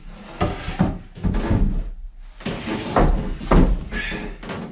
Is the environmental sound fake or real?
real